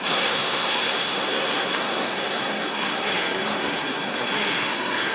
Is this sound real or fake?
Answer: fake